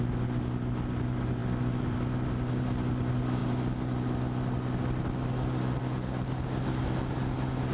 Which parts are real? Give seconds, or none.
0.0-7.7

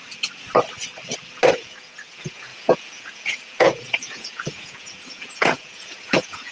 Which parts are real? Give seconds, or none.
0.0-1.5

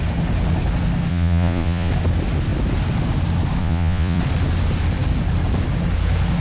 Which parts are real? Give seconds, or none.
0.0-1.1; 1.9-3.6; 4.2-6.4

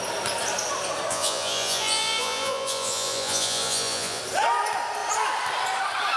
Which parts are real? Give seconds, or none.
0.0-1.1; 4.2-6.2

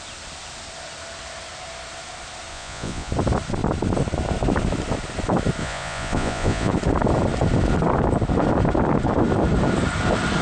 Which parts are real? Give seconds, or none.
0.0-2.5; 3.1-5.6; 6.7-10.4

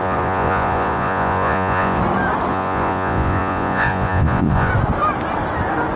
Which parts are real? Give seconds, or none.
2.0-2.5; 4.7-6.0